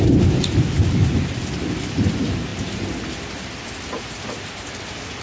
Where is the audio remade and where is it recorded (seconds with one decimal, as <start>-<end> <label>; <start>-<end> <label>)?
0.0-5.2 recorded